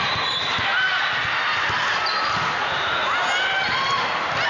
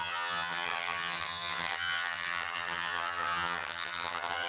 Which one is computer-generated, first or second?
second